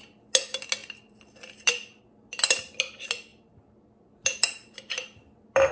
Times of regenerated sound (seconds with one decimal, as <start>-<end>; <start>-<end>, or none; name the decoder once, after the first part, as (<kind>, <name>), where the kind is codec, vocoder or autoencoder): none